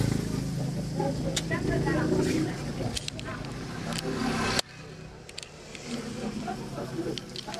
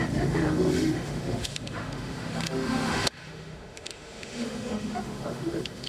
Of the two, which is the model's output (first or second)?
second